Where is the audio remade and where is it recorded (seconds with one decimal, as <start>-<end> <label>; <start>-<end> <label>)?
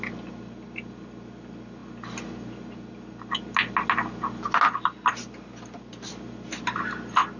0.0-7.4 recorded